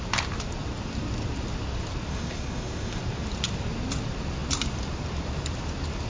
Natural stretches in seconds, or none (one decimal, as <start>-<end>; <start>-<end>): 0.0-2.1; 3.0-6.1